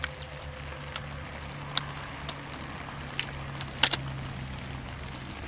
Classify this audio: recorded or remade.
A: recorded